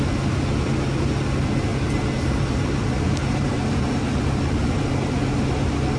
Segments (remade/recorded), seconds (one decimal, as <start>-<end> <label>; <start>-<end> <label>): 0.0-1.7 recorded; 1.7-5.3 remade; 5.3-6.0 recorded